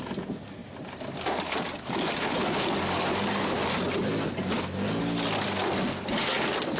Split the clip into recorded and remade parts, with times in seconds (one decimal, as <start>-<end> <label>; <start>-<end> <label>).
0.0-6.8 recorded